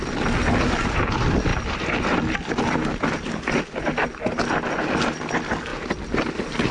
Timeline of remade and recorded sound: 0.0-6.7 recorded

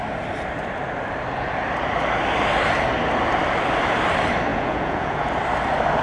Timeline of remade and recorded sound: 0.0-4.5 recorded; 4.5-5.3 remade; 5.3-6.0 recorded

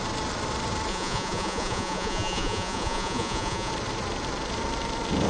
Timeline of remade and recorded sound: 0.0-0.9 recorded; 0.9-3.7 remade; 3.7-5.3 recorded

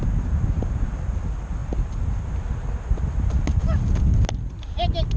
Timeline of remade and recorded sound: 0.0-5.2 recorded

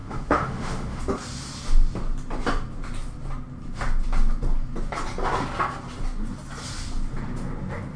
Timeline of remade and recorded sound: 0.0-1.0 remade; 1.0-8.0 recorded